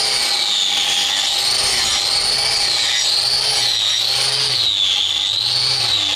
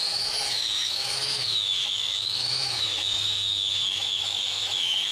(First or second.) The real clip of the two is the first